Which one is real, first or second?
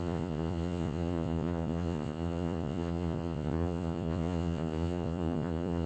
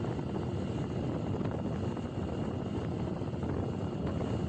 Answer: second